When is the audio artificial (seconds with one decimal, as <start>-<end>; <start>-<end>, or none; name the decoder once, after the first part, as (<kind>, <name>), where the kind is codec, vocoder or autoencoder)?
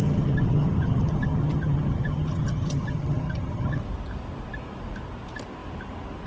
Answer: 0.0-3.8 (vocoder, HiFi-GAN)